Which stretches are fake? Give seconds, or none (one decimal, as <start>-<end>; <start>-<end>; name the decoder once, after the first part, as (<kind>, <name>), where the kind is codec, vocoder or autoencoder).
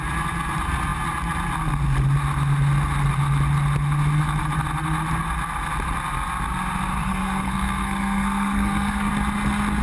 7.0-9.1 (codec, SNAC)